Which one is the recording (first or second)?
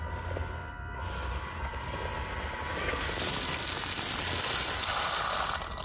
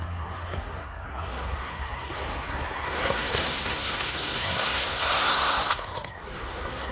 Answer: first